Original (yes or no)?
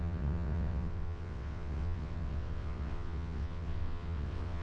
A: no